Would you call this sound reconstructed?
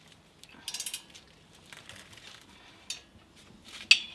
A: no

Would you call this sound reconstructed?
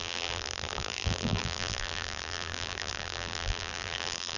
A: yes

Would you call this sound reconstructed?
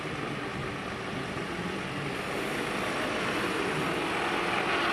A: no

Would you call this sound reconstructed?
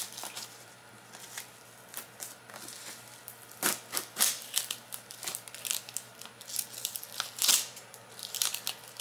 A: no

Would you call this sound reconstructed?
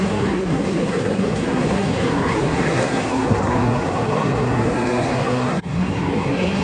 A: yes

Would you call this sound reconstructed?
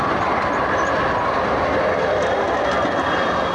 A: no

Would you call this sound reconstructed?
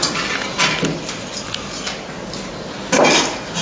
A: no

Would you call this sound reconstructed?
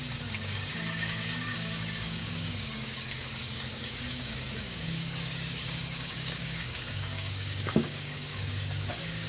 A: yes